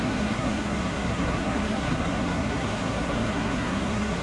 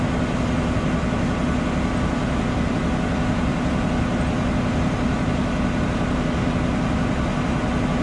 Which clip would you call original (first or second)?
second